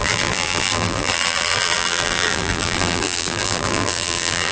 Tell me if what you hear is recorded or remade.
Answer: remade